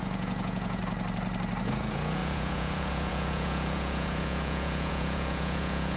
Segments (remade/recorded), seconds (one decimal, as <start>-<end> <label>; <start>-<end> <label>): 0.0-0.8 remade; 0.8-1.6 recorded; 1.6-6.0 remade